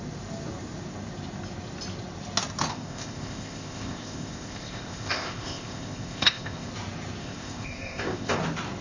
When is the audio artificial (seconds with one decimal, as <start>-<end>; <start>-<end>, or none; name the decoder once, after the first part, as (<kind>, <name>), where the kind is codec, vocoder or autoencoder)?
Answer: 2.7-6.7 (codec, ZipCodec); 7.2-8.4